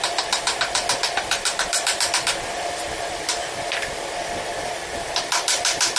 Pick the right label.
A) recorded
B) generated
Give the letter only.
B